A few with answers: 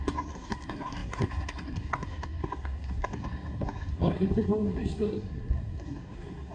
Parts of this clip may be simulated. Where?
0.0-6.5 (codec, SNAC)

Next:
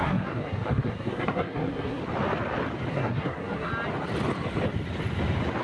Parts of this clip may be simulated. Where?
0.0-2.0 (codec, SNAC); 2.9-3.7

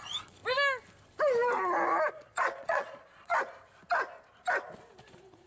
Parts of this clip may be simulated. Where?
0.0-0.4 (vocoder, Vocos); 2.1-3.3; 5.0-5.5

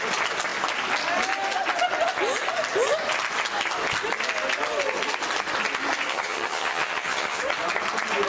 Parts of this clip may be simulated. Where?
6.1-7.4 (vocoder, HiFi-GAN)